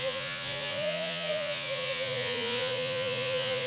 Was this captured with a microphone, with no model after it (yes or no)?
no